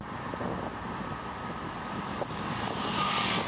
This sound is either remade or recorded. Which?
recorded